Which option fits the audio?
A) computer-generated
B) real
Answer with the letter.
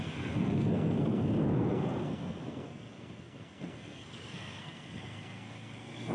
A